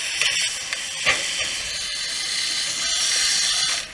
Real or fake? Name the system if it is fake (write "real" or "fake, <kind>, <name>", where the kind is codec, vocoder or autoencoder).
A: real